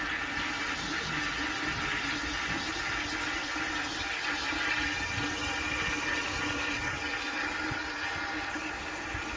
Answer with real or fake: real